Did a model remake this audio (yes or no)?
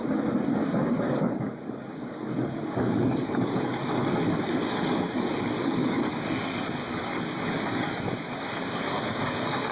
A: yes